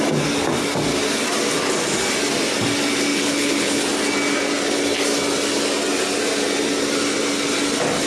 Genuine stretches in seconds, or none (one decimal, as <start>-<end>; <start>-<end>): 0.0-3.1; 3.8-8.1